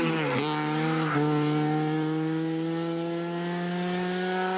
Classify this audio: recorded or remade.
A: recorded